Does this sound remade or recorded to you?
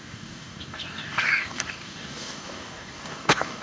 remade